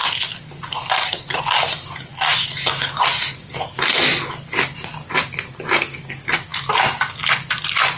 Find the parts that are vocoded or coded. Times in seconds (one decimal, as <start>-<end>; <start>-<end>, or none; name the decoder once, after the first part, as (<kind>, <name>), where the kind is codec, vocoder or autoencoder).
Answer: 0.0-1.4 (vocoder, BigVGAN v2); 2.1-3.0